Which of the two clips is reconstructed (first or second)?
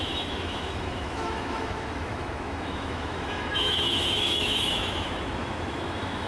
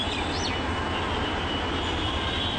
first